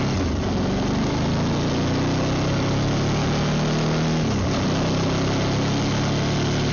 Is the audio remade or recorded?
recorded